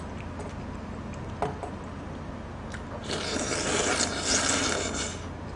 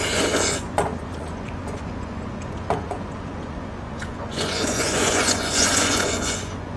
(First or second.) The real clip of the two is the first